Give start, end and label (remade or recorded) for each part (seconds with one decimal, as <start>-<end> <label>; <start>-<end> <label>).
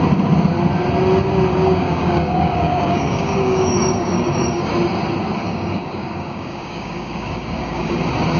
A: 0.0-1.5 recorded; 1.5-4.7 remade; 4.7-5.4 recorded; 5.4-8.0 remade; 8.0-8.4 recorded